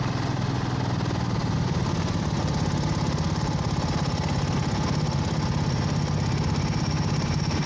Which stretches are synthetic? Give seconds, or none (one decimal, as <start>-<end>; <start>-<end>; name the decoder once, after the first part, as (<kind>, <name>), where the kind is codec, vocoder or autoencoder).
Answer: none